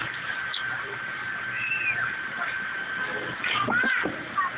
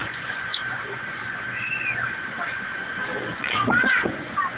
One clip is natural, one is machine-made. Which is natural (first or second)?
first